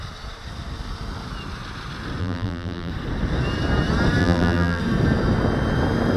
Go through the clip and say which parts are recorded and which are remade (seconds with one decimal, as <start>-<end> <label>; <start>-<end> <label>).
0.0-2.2 recorded; 2.2-2.9 remade; 2.9-4.2 recorded; 4.2-4.8 remade; 4.8-6.2 recorded